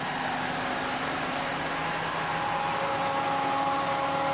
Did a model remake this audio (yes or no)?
no